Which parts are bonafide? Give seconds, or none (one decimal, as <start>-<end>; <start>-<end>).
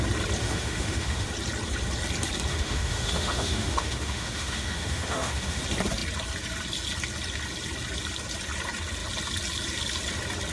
0.0-0.4; 1.3-2.5; 5.6-10.5